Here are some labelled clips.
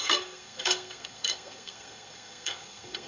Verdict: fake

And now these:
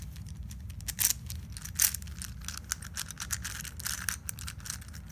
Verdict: real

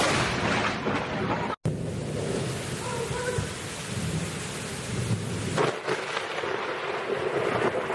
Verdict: real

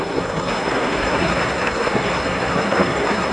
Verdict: fake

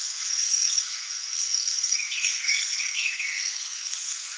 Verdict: fake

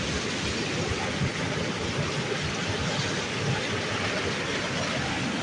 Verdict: real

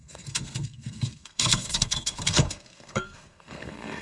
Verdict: fake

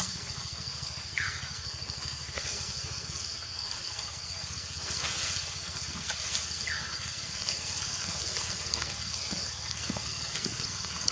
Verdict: fake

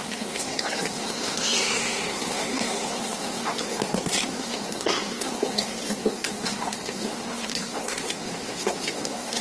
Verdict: fake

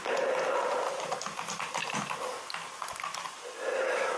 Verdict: real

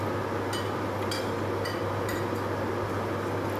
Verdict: real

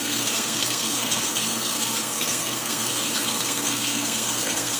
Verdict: fake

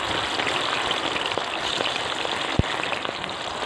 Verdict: real